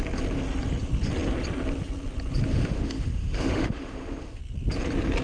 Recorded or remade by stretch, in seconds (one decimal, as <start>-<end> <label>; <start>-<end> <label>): 0.0-2.5 recorded; 2.5-4.4 remade; 4.4-5.2 recorded

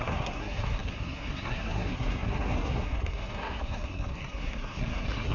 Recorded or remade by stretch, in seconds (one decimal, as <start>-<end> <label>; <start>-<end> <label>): 0.0-5.3 remade

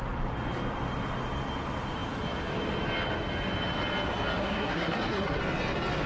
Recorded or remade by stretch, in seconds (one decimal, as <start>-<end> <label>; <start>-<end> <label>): 0.0-4.4 recorded; 4.4-5.4 remade; 5.4-6.1 recorded

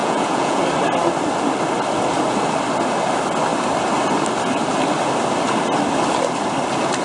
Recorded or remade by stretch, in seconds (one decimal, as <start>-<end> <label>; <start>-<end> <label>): 0.0-0.6 remade; 0.6-7.0 recorded

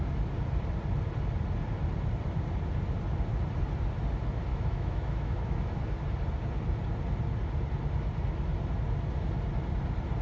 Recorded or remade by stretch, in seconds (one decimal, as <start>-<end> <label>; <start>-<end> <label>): 0.0-4.5 recorded; 4.5-5.8 remade; 5.8-10.2 recorded